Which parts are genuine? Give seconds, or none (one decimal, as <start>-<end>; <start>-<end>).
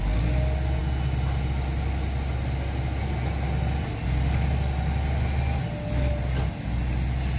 0.0-7.4